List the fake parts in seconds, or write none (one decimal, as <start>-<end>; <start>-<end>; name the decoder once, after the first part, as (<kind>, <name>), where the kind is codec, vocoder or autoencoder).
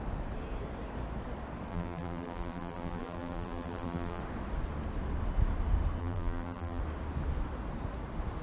1.7-4.2 (vocoder, BigVGAN v2); 6.0-6.8